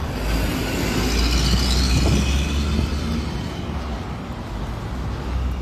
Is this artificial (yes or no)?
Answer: no